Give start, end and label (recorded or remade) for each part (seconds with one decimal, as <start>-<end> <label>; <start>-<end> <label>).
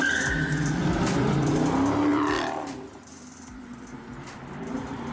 0.0-0.8 recorded; 0.8-1.5 remade; 1.5-2.1 recorded; 2.1-5.1 remade